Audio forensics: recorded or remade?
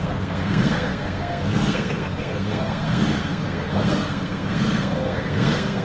remade